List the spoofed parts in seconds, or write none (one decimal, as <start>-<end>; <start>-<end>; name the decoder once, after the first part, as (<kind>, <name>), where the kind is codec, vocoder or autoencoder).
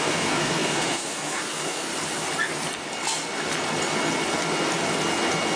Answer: 0.0-1.9 (codec, SNAC)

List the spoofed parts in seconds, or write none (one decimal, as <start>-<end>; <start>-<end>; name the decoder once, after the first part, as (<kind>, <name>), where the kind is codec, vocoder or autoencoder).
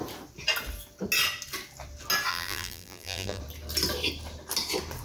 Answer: 2.3-3.4 (vocoder, BigVGAN v2)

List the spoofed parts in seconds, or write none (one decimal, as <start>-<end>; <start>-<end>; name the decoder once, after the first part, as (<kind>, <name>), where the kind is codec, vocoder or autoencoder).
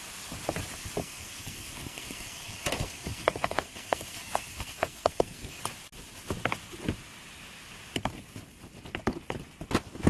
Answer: 1.0-5.6 (codec, SNAC)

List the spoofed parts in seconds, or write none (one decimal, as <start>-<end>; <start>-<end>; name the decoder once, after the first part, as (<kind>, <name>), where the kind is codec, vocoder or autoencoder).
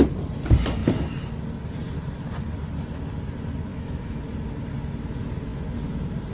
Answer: 3.7-4.2 (autoencoder, DAC-VAE)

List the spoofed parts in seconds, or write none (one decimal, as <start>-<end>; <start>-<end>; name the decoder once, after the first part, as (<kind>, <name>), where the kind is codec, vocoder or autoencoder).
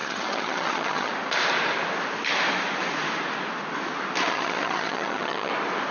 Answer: 0.0-1.1 (vocoder, HiFi-GAN); 4.3-5.5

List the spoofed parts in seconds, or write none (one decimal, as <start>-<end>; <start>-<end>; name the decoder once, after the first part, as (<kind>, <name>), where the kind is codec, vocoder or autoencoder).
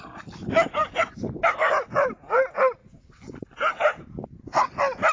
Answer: 0.8-2.3 (vocoder, BigVGAN v2); 2.8-4.6